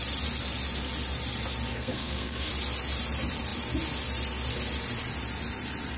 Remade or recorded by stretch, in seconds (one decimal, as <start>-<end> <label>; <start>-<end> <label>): 0.0-1.7 recorded; 1.7-2.5 remade; 2.5-6.0 recorded